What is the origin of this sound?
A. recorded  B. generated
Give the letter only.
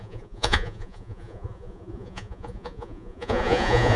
B